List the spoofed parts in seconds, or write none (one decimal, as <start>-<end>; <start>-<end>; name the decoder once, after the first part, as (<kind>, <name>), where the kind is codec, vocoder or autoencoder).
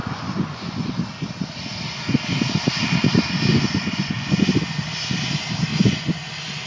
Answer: 0.0-0.9 (vocoder, Vocos); 3.5-4.5; 5.7-6.2